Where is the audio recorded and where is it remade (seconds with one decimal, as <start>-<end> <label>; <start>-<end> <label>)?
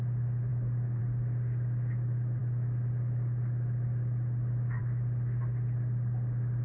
0.0-0.5 recorded; 0.5-1.0 remade; 1.0-6.6 recorded